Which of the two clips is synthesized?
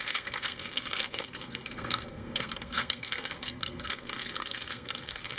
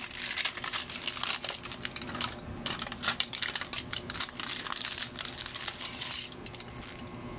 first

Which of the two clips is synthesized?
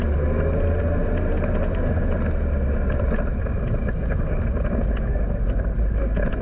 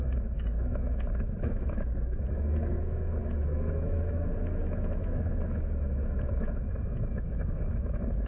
second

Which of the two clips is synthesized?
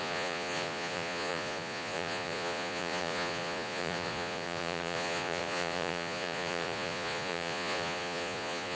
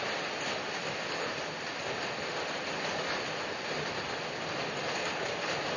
first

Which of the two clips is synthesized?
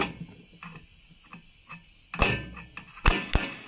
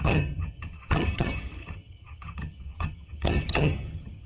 second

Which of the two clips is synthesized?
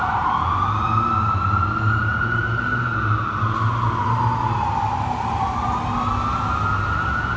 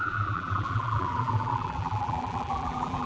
second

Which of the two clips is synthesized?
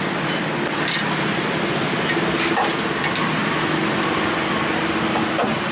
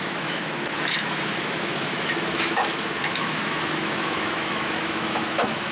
second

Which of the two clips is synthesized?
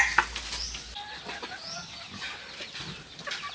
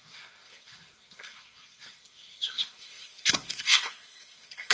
second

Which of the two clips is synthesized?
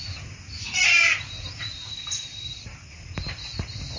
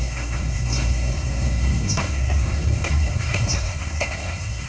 second